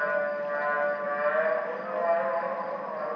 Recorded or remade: recorded